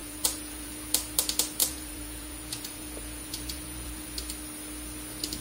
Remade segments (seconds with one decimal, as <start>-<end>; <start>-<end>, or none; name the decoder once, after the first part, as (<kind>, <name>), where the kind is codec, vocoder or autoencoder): 0.0-0.7 (vocoder, Vocos); 1.6-4.1

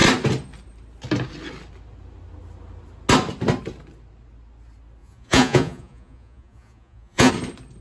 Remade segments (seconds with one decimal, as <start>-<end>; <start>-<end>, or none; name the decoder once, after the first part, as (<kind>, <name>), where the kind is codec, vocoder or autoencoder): 5.0-7.3 (vocoder, Vocos)